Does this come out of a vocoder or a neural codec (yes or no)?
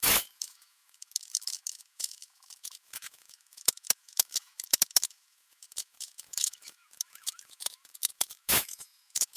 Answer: yes